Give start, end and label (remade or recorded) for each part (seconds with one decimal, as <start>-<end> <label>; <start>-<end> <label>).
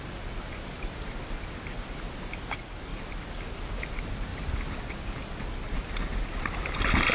0.0-2.9 recorded; 2.9-3.6 remade; 3.6-7.1 recorded